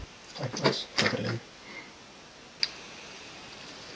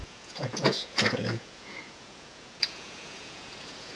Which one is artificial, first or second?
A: second